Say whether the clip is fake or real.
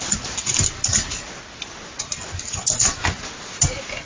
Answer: real